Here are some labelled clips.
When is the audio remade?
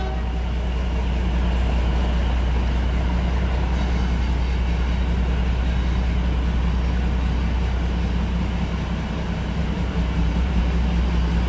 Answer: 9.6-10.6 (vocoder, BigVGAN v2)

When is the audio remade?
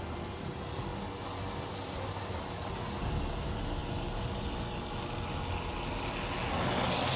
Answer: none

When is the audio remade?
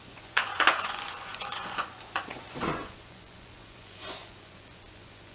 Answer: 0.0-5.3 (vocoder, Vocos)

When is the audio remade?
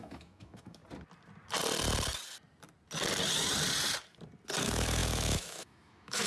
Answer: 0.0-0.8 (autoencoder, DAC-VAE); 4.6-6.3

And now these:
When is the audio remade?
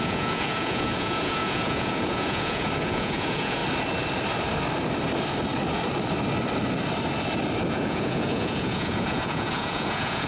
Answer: 0.0-3.6 (vocoder, Vocos); 7.7-10.3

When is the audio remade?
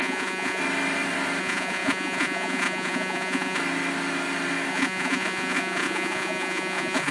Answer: 0.0-0.6 (vocoder, Vocos); 1.4-3.6; 4.7-7.1